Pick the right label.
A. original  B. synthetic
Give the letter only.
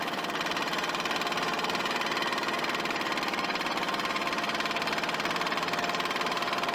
A